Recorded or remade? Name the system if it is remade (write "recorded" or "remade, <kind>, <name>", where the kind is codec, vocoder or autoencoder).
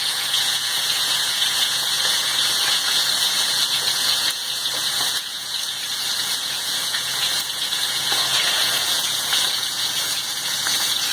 remade, vocoder, Vocos